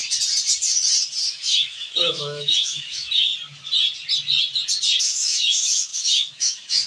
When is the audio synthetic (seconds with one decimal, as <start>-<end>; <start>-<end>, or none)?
1.3-3.3; 5.0-6.9